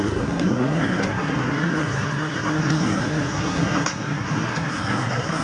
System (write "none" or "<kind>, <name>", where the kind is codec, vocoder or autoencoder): codec, SNAC